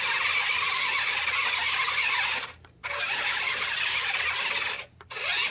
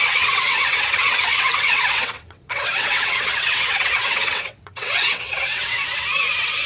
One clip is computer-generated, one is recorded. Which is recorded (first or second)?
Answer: first